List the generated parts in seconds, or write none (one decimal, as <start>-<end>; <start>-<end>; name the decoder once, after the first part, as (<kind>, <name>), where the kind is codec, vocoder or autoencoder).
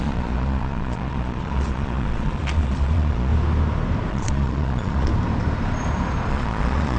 0.0-3.3 (vocoder, Vocos); 4.1-5.1; 6.3-7.0